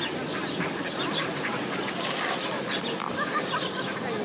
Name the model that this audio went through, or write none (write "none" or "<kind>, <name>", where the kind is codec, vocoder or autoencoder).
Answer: none